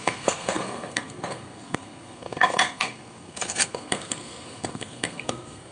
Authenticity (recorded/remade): remade